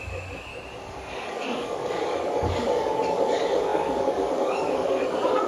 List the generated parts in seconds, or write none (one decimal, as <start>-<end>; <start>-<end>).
0.0-0.5; 1.1-5.5